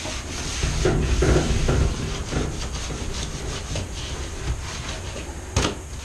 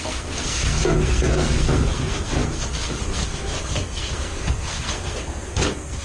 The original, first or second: first